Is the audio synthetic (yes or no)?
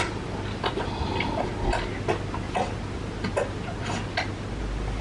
no